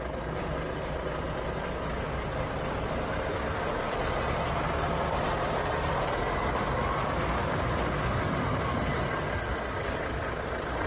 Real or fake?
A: real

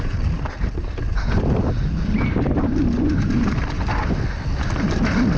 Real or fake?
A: fake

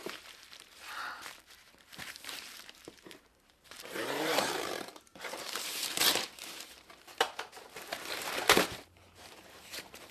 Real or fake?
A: fake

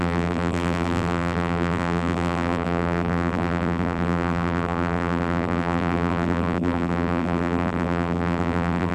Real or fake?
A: fake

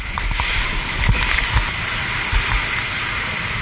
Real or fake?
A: real